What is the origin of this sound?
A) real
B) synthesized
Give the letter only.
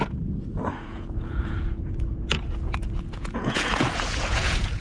B